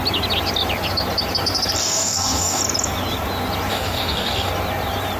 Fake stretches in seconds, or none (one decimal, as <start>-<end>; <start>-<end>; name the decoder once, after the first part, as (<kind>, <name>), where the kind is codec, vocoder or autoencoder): 1.8-2.6 (codec, DAC); 3.7-4.5